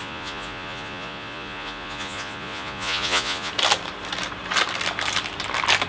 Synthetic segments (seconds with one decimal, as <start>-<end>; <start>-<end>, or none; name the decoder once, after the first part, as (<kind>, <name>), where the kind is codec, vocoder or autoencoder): 0.0-3.5 (vocoder, Vocos)

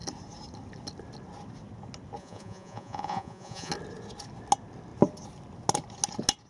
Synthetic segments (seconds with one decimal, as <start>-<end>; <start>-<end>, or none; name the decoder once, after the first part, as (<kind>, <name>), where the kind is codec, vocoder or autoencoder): 2.2-3.7 (vocoder, Vocos)